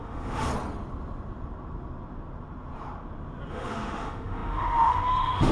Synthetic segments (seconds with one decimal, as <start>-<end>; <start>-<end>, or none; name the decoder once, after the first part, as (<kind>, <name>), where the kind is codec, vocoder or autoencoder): 0.0-0.5 (autoencoder, DAC-VAE); 3.5-5.5